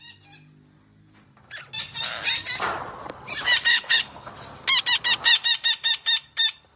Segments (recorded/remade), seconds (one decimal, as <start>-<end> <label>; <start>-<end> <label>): 0.0-3.7 recorded; 3.7-4.3 remade; 4.3-6.8 recorded